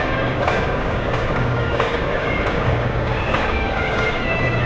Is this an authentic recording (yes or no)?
no